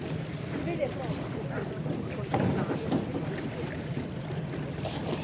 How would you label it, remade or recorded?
remade